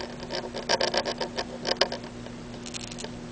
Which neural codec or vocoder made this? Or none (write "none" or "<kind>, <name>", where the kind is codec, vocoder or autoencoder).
none